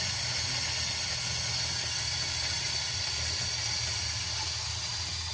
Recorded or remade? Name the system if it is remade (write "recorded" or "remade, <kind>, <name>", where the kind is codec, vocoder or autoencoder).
recorded